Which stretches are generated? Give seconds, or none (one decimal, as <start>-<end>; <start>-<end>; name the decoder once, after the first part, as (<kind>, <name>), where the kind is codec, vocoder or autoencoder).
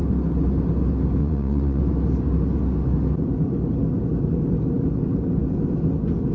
1.2-1.8 (vocoder, Vocos)